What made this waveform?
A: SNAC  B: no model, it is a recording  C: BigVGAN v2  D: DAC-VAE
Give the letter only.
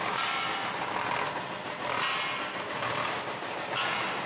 B